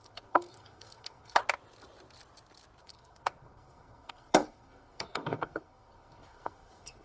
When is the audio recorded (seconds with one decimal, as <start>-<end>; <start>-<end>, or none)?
1.4-2.8